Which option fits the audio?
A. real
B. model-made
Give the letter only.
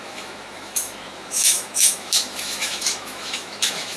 B